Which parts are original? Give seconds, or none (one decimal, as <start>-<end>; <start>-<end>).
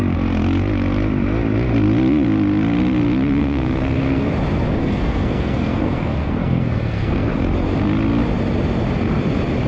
0.0-3.4; 4.3-4.8; 7.3-9.7